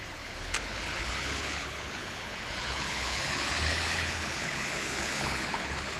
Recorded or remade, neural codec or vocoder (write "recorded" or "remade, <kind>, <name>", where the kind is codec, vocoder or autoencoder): remade, codec, HILCodec